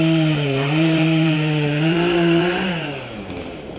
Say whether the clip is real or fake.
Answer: fake